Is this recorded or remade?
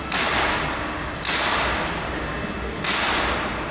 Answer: recorded